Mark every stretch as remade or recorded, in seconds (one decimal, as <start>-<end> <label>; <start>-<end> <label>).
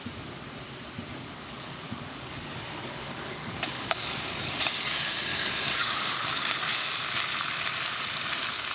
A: 0.0-1.1 recorded; 1.1-4.6 remade; 4.6-5.3 recorded; 5.3-6.9 remade; 6.9-8.7 recorded